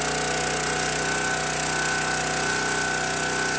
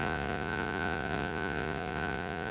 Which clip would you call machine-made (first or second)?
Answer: second